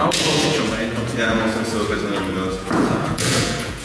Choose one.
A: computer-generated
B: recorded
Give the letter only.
A